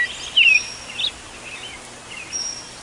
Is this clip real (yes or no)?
yes